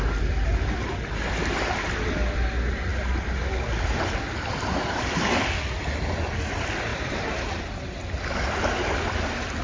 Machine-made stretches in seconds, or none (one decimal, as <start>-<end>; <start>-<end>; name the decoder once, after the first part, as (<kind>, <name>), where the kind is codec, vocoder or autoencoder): 6.9-7.9 (vocoder, BigVGAN v2)